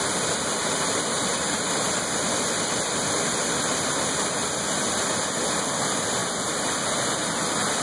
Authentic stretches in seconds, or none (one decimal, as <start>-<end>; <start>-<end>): 0.0-1.3; 1.9-3.7; 4.3-7.8